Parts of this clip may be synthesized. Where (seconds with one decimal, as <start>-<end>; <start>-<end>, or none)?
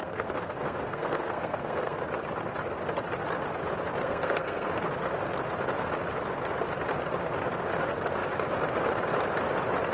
0.0-2.0; 4.0-4.7